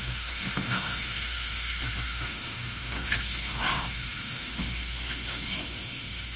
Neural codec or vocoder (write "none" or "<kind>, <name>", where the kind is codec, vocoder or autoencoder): autoencoder, DAC-VAE